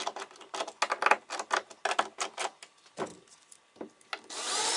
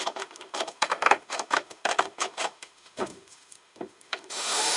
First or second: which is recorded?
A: first